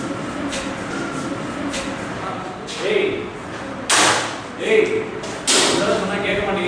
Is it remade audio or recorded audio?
recorded